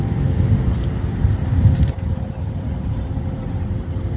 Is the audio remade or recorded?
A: remade